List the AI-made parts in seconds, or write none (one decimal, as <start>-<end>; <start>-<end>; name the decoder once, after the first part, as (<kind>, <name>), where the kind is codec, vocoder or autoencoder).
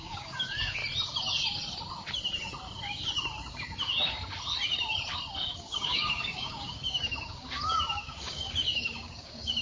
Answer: 0.0-0.8 (codec, DAC); 5.6-9.6